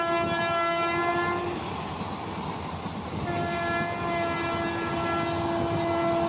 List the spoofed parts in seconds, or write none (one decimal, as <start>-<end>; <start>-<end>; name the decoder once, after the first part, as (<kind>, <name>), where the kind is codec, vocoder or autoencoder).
none